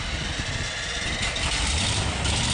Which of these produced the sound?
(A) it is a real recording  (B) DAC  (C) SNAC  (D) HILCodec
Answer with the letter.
A